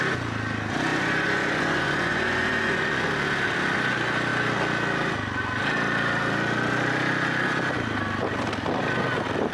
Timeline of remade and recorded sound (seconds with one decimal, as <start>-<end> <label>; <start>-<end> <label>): 0.0-0.9 recorded; 0.9-3.1 remade; 3.1-9.5 recorded